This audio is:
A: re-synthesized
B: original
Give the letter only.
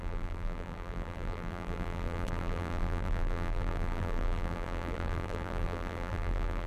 A